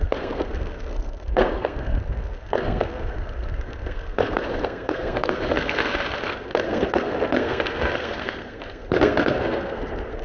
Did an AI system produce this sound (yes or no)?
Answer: yes